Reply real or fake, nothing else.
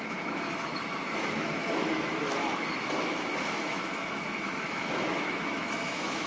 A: fake